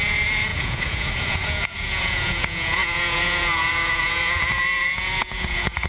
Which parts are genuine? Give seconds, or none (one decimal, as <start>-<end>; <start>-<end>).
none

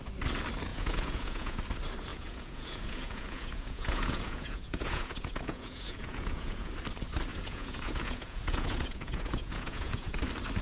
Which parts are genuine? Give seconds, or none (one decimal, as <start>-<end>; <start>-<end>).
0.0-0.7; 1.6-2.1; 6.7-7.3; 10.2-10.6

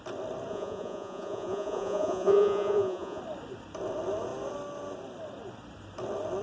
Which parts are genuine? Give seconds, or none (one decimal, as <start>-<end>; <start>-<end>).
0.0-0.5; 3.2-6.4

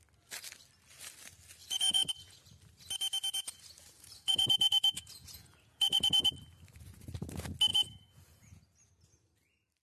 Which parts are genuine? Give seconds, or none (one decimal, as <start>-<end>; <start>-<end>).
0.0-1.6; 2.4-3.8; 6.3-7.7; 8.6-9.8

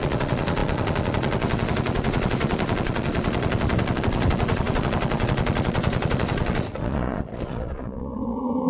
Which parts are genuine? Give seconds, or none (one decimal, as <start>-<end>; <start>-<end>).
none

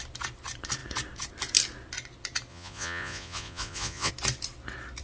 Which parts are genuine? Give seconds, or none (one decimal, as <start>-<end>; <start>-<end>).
0.0-2.5; 4.1-5.0

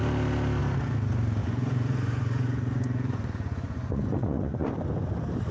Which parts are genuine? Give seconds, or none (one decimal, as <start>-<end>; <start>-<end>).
0.0-1.4; 4.7-5.5

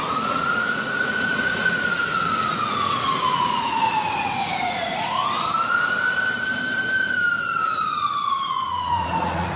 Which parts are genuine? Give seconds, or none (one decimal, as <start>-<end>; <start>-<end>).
5.2-7.8